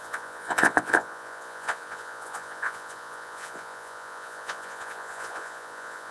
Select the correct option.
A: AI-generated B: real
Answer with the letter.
A